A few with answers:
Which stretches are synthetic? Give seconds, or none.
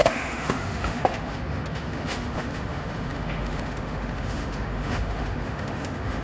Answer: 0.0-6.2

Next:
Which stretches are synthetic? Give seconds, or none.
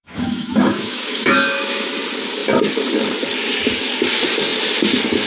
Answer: 0.0-1.9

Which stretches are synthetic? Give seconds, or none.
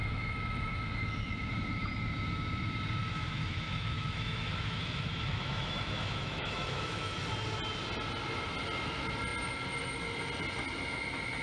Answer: 0.0-1.5; 3.0-7.2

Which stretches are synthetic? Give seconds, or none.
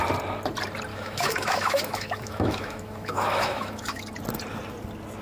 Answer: 0.9-4.0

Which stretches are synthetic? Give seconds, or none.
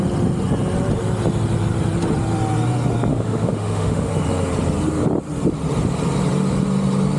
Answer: 3.1-4.1